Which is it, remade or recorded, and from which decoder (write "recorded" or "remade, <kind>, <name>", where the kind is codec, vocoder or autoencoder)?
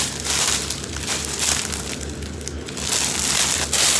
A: recorded